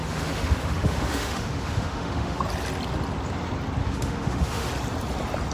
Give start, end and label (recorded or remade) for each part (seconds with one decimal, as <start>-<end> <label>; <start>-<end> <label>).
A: 0.0-2.4 remade; 2.4-3.8 recorded; 3.8-4.7 remade; 4.7-5.5 recorded